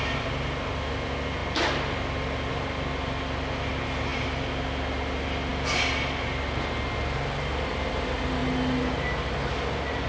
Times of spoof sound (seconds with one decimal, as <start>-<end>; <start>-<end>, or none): none